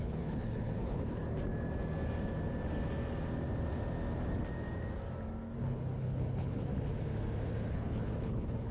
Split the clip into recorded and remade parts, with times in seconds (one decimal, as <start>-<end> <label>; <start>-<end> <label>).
0.0-1.2 remade; 1.2-5.6 recorded; 5.6-6.7 remade; 6.7-7.7 recorded; 7.7-8.7 remade